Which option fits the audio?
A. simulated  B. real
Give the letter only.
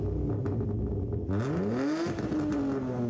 B